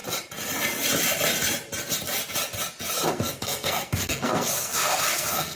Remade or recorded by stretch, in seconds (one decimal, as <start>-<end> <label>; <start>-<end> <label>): 0.0-3.1 recorded; 3.1-5.6 remade